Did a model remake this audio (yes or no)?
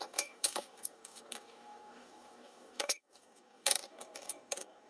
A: yes